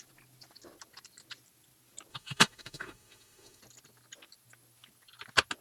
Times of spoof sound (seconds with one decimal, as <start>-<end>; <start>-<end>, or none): 2.1-3.6